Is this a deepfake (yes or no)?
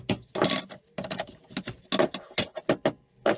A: no